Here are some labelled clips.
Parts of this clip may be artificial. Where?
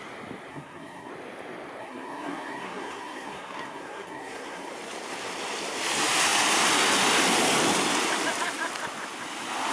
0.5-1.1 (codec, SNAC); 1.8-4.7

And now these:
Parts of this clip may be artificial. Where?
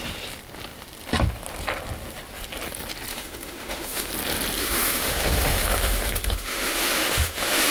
3.1-4.1 (autoencoder, DAC-VAE); 4.6-7.7